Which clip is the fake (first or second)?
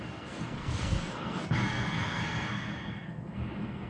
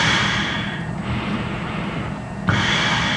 first